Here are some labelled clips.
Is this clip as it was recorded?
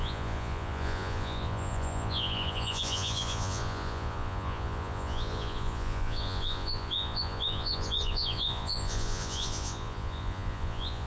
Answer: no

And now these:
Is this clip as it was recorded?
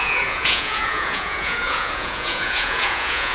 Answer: no